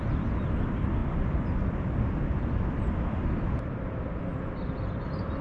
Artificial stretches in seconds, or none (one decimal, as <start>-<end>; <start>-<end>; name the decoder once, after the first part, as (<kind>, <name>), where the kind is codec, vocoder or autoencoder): none

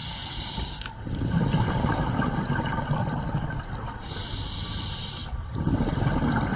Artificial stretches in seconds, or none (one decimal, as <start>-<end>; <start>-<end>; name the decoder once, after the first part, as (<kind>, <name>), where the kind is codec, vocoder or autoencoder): none

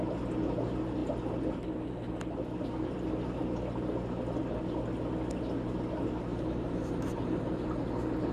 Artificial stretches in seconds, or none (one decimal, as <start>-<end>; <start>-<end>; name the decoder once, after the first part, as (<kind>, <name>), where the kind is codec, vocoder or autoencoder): 6.3-7.4 (vocoder, BigVGAN v2)